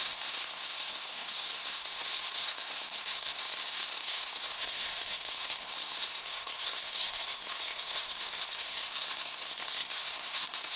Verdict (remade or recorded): remade